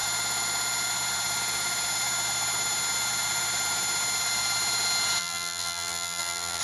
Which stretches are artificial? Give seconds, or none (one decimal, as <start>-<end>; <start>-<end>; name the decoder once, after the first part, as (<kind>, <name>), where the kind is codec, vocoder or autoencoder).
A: 5.2-6.6 (vocoder, BigVGAN v2)